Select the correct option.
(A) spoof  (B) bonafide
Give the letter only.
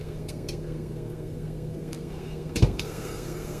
A